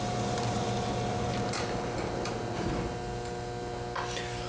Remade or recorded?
recorded